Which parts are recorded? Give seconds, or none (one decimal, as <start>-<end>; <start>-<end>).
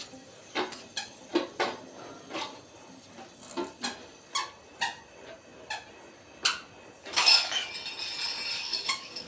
0.0-7.0; 7.7-8.5